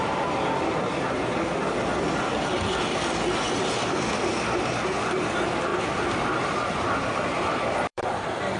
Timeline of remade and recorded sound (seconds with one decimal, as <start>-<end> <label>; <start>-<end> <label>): 0.0-5.7 recorded; 5.7-8.2 remade; 8.2-8.6 recorded